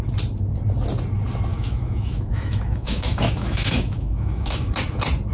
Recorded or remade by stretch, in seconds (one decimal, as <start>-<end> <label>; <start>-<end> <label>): 0.0-1.5 recorded; 1.5-4.7 remade; 4.7-5.3 recorded